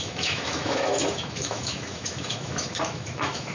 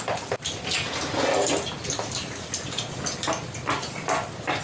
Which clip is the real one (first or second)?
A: second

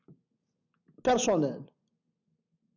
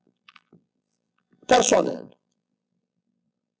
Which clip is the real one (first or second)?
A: first